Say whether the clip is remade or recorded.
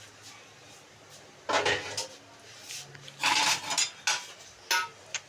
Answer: recorded